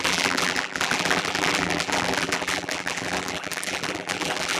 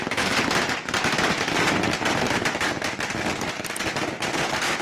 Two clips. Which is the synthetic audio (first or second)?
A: first